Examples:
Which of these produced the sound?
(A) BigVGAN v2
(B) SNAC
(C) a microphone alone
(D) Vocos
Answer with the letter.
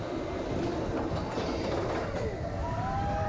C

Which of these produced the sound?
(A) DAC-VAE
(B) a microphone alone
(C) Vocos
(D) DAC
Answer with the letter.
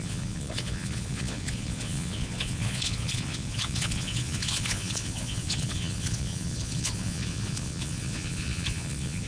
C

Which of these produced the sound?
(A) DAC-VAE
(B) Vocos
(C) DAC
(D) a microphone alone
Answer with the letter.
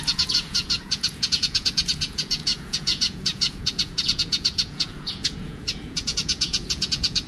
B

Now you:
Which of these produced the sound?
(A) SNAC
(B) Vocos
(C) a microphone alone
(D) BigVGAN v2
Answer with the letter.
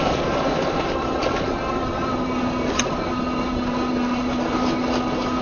C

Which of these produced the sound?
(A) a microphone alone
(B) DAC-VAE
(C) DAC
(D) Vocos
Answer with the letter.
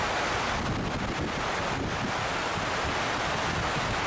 A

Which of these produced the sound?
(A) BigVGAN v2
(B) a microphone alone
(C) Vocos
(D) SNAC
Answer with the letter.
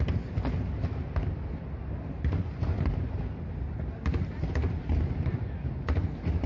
B